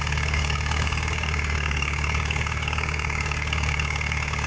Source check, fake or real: fake